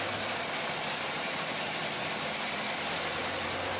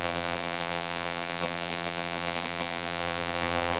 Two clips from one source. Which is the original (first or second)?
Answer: first